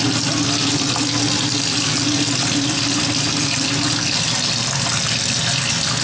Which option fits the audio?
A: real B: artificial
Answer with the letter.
A